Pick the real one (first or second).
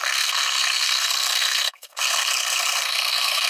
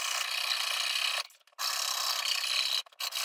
second